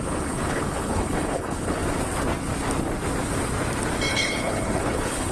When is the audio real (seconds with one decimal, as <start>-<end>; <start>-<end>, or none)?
1.8-4.1